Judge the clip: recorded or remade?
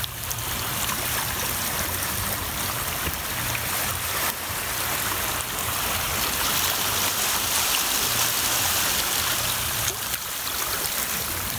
remade